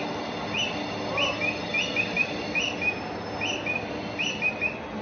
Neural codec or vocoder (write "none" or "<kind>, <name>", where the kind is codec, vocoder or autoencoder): none